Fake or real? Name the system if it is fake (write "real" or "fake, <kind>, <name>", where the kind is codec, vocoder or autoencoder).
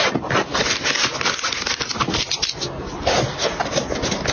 real